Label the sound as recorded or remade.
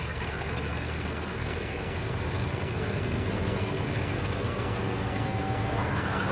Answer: remade